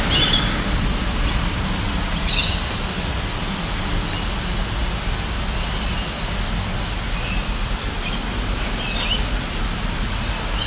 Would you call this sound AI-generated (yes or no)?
no